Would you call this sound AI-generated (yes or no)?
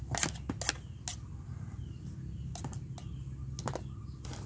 no